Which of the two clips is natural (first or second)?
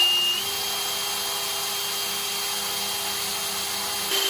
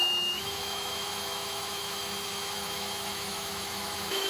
first